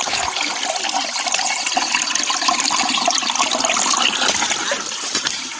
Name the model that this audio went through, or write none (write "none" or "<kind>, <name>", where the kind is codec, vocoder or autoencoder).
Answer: none